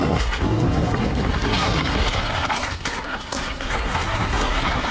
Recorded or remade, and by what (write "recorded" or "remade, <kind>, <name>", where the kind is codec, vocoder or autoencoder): remade, codec, SNAC